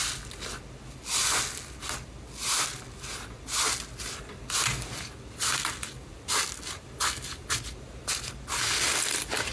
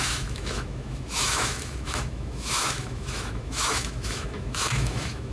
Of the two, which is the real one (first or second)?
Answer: first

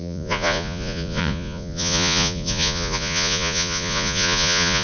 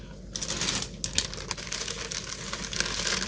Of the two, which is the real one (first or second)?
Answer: second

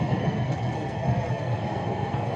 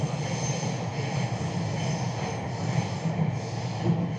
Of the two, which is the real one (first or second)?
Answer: second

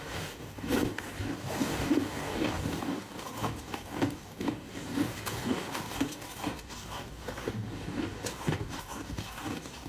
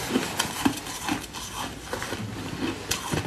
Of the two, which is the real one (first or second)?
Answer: second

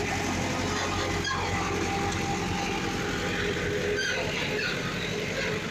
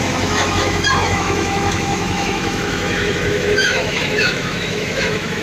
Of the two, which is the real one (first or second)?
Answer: first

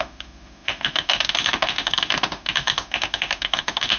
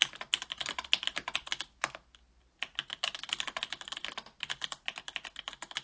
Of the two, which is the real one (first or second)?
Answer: second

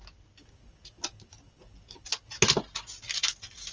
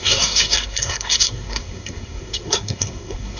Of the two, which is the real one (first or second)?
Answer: first